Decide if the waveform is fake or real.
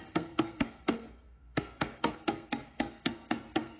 fake